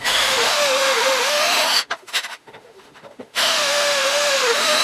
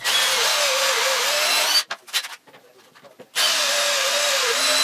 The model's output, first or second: first